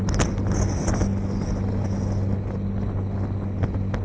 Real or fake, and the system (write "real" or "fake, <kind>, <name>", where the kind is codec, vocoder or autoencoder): real